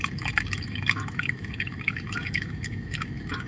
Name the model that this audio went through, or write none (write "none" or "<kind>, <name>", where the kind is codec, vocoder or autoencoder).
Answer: autoencoder, DAC-VAE